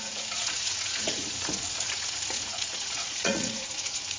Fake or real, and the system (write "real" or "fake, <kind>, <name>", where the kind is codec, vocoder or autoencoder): fake, vocoder, Vocos